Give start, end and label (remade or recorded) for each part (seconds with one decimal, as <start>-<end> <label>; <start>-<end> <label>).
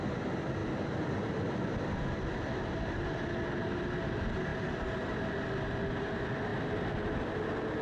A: 0.0-7.8 recorded